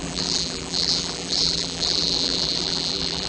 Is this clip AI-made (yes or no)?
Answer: yes